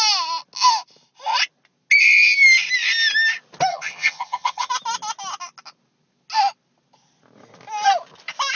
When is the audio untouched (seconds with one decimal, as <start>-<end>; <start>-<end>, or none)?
0.0-3.7; 4.7-8.6